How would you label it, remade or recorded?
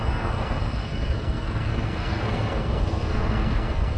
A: remade